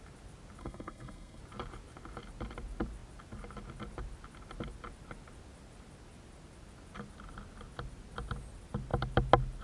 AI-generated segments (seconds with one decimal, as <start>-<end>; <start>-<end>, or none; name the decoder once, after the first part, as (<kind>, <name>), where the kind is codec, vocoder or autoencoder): 0.6-1.4 (codec, SNAC)

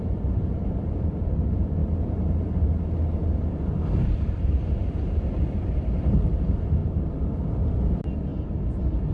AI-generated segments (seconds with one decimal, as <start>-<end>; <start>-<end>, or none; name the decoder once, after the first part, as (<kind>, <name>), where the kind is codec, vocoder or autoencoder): 0.0-1.8 (vocoder, BigVGAN v2); 4.0-6.8; 7.7-8.3